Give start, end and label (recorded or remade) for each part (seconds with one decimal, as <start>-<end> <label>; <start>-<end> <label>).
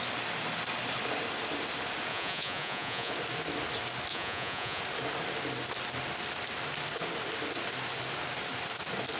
0.0-2.1 recorded; 2.1-3.1 remade; 3.1-4.1 recorded; 4.1-4.8 remade; 4.8-9.2 recorded